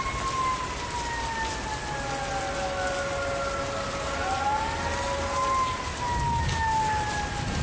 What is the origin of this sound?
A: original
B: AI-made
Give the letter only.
A